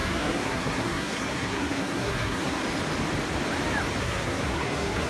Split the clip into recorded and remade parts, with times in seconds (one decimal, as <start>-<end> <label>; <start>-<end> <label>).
0.0-2.6 remade; 2.6-4.0 recorded; 4.0-5.1 remade